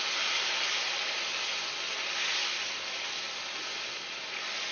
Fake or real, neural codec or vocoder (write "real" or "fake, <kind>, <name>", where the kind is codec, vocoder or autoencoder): real